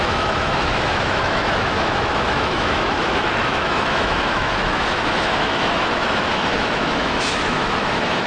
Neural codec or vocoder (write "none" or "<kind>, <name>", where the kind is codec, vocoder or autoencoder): autoencoder, DAC-VAE